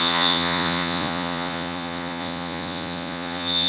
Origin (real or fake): fake